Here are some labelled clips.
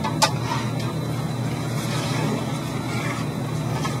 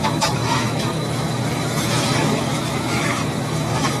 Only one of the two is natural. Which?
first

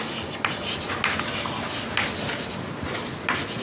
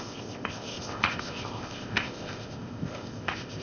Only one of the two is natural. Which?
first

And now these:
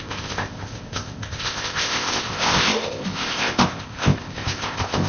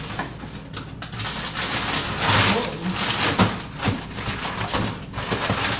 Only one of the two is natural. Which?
second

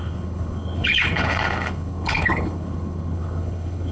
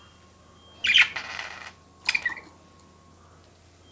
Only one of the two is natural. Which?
second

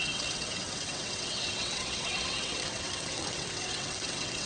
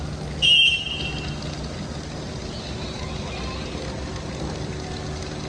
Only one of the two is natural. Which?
second